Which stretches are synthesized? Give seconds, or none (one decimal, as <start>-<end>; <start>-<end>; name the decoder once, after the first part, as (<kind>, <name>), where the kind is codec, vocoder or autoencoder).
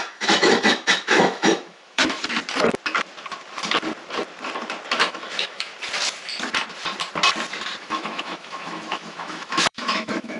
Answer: 0.0-2.2 (autoencoder, DAC-VAE); 5.0-5.7; 7.8-10.4